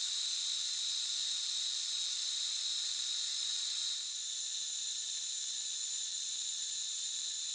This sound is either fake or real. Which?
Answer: fake